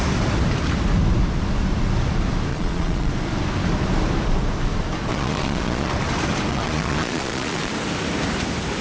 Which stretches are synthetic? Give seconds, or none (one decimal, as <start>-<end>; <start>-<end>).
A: 2.5-3.1; 5.1-5.9; 6.5-7.7